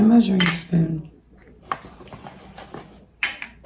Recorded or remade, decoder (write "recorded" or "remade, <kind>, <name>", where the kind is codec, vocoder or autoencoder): recorded